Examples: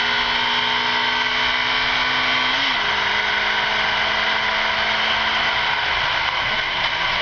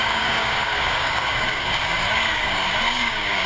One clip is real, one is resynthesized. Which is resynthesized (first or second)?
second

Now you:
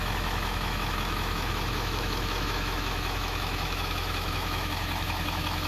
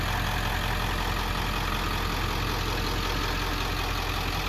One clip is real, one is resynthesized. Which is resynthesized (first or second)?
first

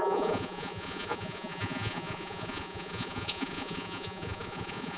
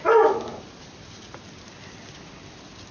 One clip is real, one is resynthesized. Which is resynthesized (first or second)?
first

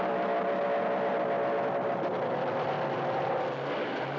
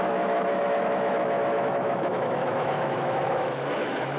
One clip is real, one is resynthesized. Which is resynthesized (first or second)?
second